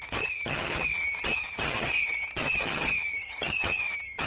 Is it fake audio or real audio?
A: fake